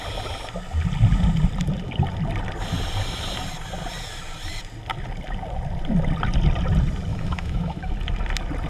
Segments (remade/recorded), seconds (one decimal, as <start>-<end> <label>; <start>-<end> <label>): 0.0-7.1 recorded; 7.1-7.9 remade; 7.9-8.7 recorded

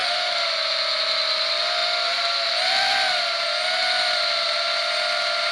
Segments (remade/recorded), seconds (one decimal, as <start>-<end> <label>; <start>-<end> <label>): 0.0-5.5 recorded

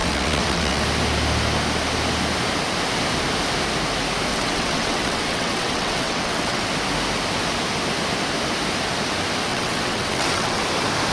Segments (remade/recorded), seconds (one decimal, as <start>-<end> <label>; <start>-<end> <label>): 0.0-0.8 remade; 0.8-4.3 recorded; 4.3-6.6 remade; 6.6-9.5 recorded; 9.5-10.6 remade; 10.6-11.1 recorded

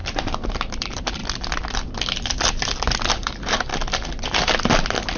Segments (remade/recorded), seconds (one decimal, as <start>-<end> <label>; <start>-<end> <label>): 0.0-0.7 recorded; 0.7-1.2 remade; 1.2-3.1 recorded; 3.1-3.7 remade; 3.7-5.2 recorded

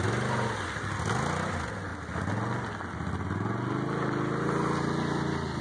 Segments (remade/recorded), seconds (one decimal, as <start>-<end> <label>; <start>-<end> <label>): 0.0-5.6 recorded

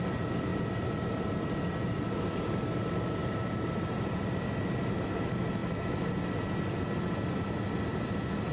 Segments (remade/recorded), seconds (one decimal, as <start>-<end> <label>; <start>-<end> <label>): 0.0-8.5 recorded

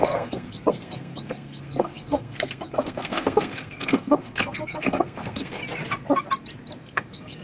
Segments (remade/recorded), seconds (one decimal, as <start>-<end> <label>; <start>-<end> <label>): 0.0-5.6 remade; 5.6-6.8 recorded; 6.8-7.4 remade